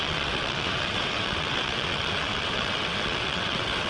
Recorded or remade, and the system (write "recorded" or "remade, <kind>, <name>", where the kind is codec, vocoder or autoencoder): remade, vocoder, WaveNeXt